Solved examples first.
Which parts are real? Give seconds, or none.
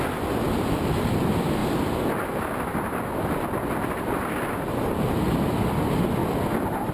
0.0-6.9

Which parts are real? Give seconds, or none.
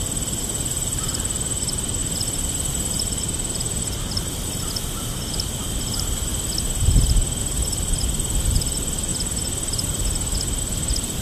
2.0-2.7; 6.3-7.4; 9.1-10.6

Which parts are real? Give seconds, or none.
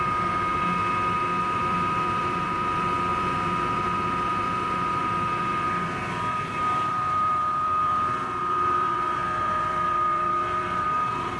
0.5-1.4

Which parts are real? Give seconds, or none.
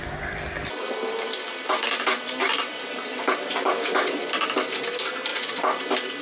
0.0-2.4; 4.2-6.2